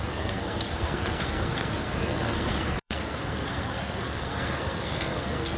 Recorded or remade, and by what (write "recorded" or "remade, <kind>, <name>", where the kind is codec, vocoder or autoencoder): remade, codec, SNAC